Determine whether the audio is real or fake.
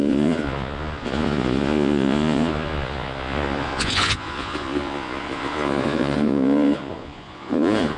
fake